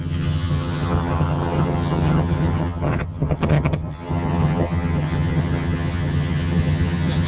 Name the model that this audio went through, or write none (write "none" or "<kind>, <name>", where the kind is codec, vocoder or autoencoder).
vocoder, HiFi-GAN